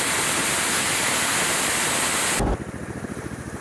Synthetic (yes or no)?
no